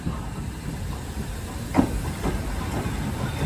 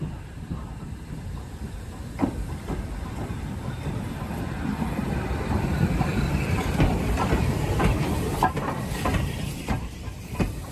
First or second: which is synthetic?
second